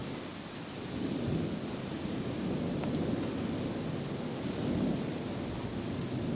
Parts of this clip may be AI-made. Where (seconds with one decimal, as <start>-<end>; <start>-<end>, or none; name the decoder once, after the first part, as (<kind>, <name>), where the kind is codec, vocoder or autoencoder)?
none